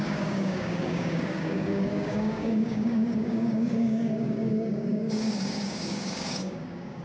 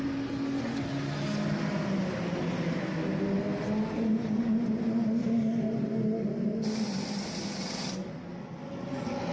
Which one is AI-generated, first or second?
first